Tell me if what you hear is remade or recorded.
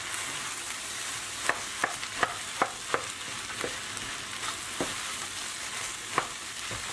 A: recorded